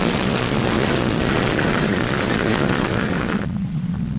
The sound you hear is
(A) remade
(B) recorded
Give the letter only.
A